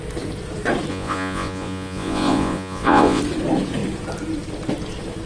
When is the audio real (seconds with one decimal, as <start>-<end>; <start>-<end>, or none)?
0.0-0.9; 3.2-5.3